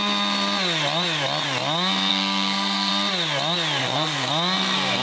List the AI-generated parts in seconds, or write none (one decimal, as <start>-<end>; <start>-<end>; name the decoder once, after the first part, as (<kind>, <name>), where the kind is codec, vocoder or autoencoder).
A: 2.1-2.9 (codec, SNAC); 3.8-4.3